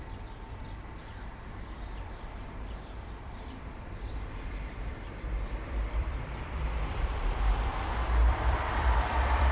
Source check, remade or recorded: remade